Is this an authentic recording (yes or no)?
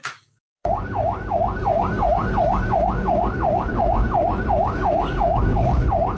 no